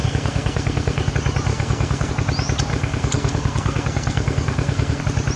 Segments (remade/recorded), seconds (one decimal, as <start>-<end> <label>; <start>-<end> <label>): 0.0-1.1 remade; 1.1-1.5 recorded; 1.5-2.1 remade; 2.1-2.7 recorded; 2.7-5.0 remade; 5.0-5.4 recorded